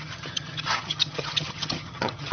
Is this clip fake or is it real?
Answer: fake